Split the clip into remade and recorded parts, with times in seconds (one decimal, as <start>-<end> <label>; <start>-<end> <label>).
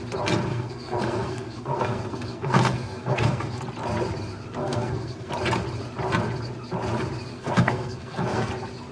0.0-0.5 recorded; 0.5-3.6 remade; 3.6-4.6 recorded; 4.6-5.3 remade; 5.3-7.3 recorded; 7.3-8.5 remade; 8.5-8.9 recorded